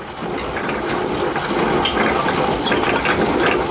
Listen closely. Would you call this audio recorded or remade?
recorded